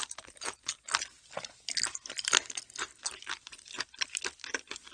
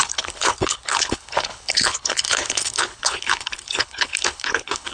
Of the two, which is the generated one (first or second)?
second